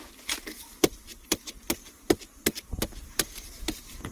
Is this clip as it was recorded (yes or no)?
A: no